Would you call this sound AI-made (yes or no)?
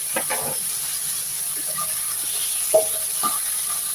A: no